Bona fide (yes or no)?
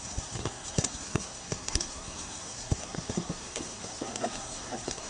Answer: no